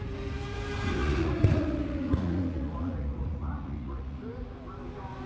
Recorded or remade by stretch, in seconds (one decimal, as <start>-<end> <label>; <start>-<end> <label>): 0.0-1.0 recorded; 1.0-4.2 remade; 4.2-5.3 recorded